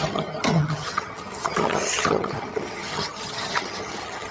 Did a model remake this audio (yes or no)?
yes